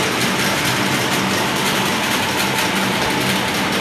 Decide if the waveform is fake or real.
real